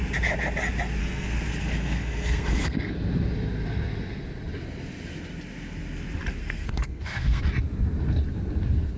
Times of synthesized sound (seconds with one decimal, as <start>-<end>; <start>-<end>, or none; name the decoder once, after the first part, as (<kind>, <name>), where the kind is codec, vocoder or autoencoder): 1.0-2.9 (codec, SNAC); 6.4-7.4